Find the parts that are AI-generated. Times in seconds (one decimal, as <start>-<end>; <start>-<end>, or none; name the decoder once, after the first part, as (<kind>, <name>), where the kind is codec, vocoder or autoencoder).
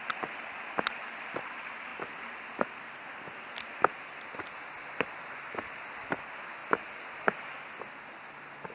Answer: none